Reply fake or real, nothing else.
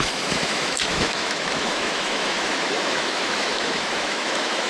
fake